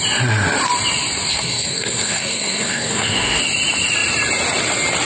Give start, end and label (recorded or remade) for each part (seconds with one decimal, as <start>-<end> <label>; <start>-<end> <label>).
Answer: 0.0-1.3 recorded; 1.3-3.4 remade; 3.4-5.0 recorded